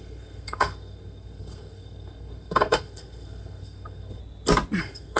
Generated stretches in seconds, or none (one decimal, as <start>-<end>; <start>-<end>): 0.0-4.2; 4.8-5.2